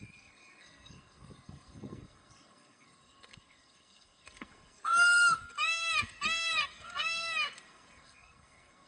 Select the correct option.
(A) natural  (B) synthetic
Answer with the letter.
B